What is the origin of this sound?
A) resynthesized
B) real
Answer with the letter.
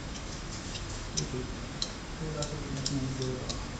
A